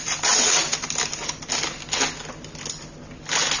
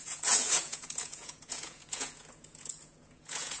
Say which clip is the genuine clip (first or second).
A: first